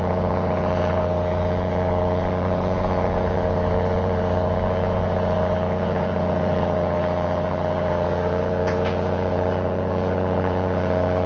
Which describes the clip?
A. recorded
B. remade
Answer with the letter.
B